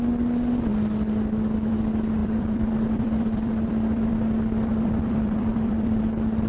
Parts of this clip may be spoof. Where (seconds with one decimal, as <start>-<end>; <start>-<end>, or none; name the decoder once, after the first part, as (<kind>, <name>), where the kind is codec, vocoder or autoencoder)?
2.2-6.0 (vocoder, BigVGAN v2)